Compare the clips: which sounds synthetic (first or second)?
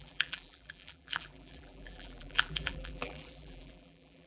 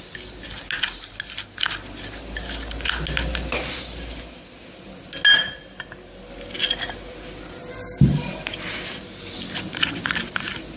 first